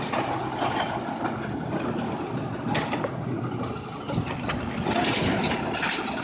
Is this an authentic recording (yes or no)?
yes